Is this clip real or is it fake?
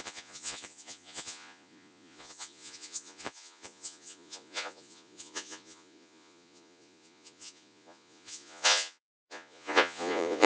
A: fake